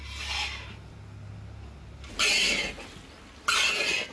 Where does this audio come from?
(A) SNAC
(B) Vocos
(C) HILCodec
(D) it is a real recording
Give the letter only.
D